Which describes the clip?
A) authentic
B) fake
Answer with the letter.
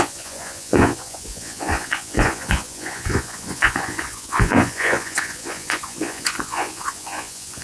B